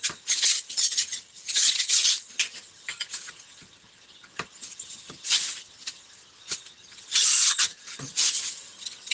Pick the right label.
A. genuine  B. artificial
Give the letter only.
B